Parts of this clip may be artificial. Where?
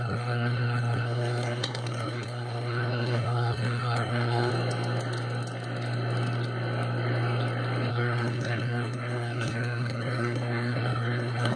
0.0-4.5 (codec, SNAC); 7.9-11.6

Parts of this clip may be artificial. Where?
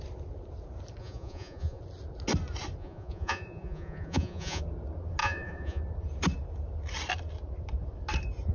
1.0-1.8 (vocoder, Vocos); 2.8-4.6; 5.2-5.8